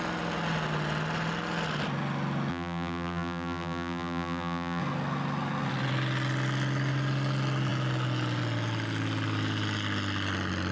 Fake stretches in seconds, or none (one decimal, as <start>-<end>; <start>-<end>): 2.5-4.8